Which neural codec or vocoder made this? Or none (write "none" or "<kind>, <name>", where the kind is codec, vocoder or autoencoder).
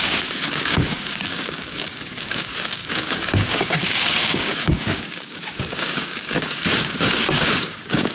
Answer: codec, DAC